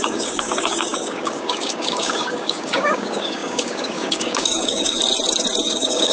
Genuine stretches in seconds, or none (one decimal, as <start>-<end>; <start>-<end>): 5.0-5.6